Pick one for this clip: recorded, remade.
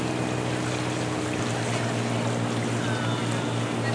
recorded